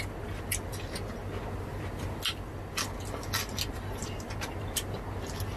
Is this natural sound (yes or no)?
yes